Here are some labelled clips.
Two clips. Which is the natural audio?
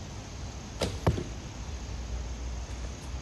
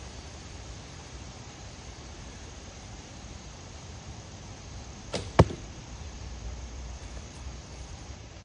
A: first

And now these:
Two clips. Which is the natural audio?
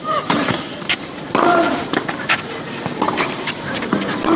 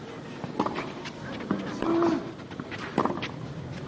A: second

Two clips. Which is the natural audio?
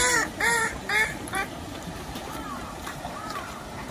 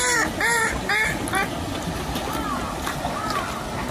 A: second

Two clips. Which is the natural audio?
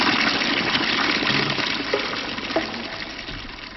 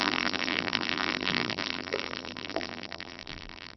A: first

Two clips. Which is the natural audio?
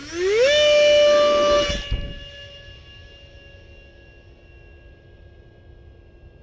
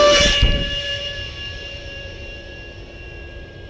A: first